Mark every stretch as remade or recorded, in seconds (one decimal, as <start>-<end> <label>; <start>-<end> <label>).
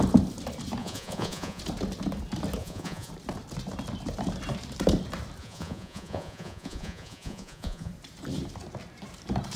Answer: 0.0-0.8 recorded; 0.8-1.6 remade; 1.6-2.6 recorded; 2.6-3.1 remade; 3.1-5.4 recorded; 5.4-7.9 remade; 7.9-9.6 recorded